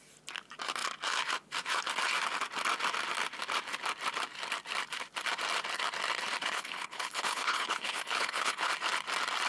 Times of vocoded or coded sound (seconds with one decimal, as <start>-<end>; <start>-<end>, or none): 6.4-8.7